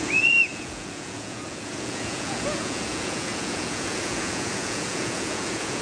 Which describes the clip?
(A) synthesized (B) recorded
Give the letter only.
A